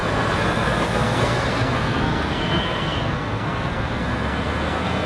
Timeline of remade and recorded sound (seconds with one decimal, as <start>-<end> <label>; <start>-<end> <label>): 0.0-5.1 remade

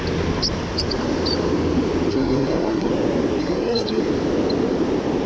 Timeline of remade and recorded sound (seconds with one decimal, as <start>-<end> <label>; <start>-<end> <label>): 0.0-2.1 recorded; 2.1-2.9 remade; 2.9-3.4 recorded; 3.4-4.0 remade; 4.0-5.3 recorded

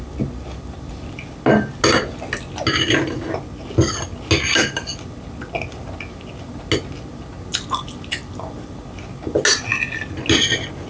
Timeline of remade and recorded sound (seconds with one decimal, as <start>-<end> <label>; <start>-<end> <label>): 0.0-10.9 recorded

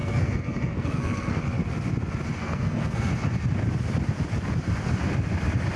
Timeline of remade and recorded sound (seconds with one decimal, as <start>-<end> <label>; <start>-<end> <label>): 0.0-1.4 remade; 1.4-2.4 recorded; 2.4-3.1 remade; 3.1-5.8 recorded

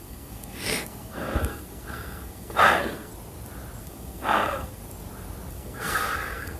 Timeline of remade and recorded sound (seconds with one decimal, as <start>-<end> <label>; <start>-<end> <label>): 0.0-3.1 remade; 3.1-3.8 recorded; 3.8-4.8 remade; 4.8-5.5 recorded; 5.5-6.6 remade